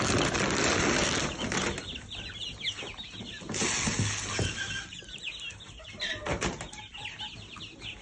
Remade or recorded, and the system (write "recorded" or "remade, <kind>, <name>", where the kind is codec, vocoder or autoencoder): recorded